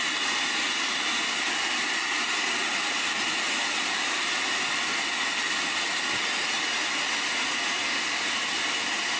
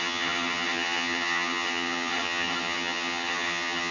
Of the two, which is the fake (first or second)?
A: second